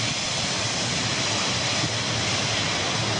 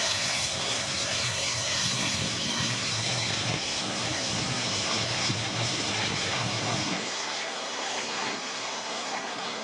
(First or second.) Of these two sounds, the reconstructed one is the second